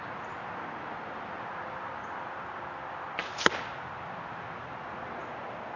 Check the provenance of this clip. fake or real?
real